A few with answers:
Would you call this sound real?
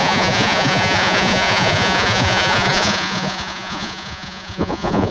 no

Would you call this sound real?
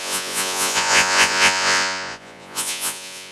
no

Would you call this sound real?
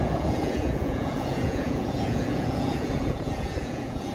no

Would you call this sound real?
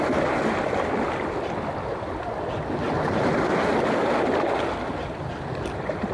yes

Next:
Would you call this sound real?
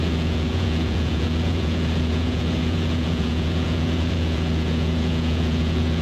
no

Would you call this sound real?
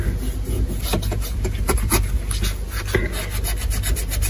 yes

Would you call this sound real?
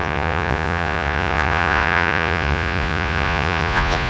no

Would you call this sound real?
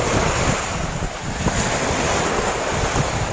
yes